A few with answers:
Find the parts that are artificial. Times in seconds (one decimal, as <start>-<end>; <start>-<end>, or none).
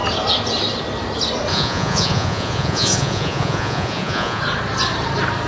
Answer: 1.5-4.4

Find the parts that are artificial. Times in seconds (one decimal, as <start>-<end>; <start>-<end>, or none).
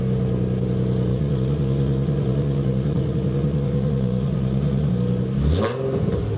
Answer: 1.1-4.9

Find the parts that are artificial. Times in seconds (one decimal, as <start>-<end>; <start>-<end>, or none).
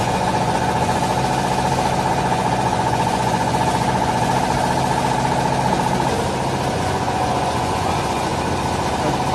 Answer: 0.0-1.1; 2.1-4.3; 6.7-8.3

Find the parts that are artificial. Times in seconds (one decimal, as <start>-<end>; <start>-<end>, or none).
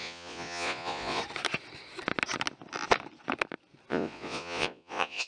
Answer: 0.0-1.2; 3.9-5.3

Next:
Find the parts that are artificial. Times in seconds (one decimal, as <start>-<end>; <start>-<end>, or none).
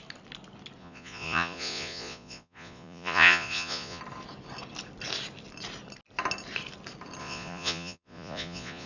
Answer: 0.8-4.0; 7.2-8.9